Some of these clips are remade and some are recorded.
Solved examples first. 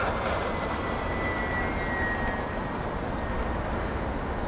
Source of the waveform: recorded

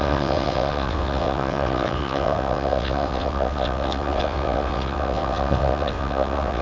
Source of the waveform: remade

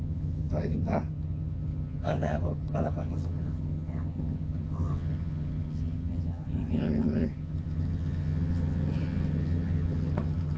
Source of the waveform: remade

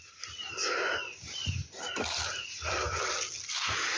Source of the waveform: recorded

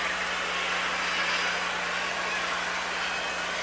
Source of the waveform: recorded